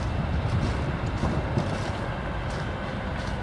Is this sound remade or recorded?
recorded